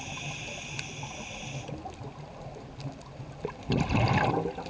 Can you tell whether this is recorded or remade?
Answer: recorded